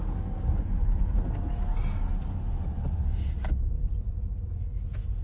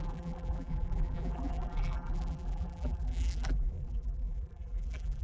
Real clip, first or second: first